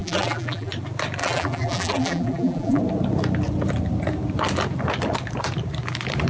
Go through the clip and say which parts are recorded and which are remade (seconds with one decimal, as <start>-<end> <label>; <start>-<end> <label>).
0.0-0.7 remade; 0.7-1.2 recorded; 1.2-2.8 remade; 2.8-6.3 recorded